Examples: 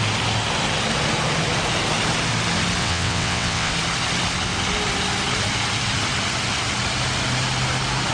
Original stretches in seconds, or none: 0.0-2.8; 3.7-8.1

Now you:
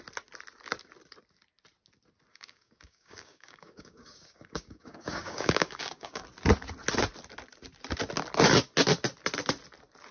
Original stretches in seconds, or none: 0.0-2.3; 6.2-10.1

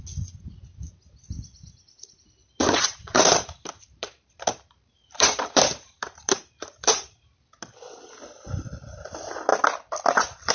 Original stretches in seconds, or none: 0.0-2.4; 7.4-10.5

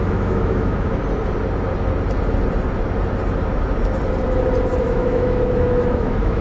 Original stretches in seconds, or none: 1.0-4.8

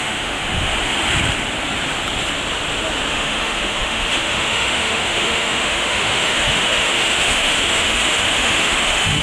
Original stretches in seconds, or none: 0.7-3.1